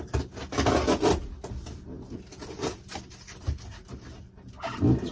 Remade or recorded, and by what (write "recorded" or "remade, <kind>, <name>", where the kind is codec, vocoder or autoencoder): recorded